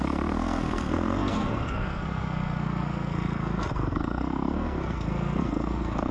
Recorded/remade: remade